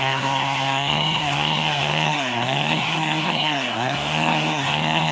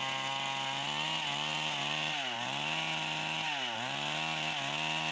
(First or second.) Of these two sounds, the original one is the second